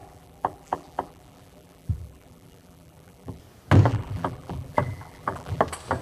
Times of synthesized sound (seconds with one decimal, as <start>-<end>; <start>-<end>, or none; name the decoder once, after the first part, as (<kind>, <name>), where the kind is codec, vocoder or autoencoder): 0.0-3.4 (vocoder, BigVGAN v2); 3.9-5.6